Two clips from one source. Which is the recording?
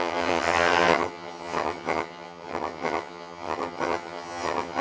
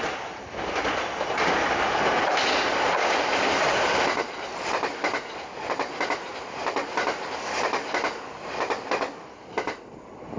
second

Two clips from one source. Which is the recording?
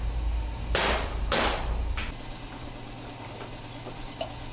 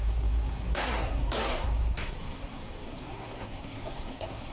first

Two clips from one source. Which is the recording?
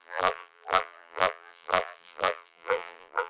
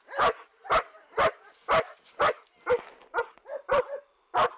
second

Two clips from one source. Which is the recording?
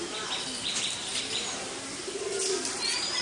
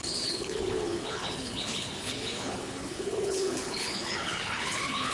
first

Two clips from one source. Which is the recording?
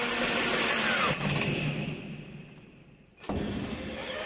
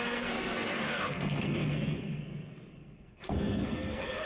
first